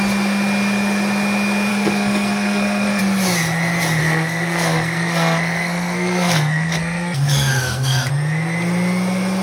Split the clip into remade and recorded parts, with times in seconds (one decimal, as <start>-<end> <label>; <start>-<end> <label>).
0.0-1.7 recorded; 1.7-3.0 remade; 3.0-4.0 recorded; 4.0-8.1 remade; 8.1-9.4 recorded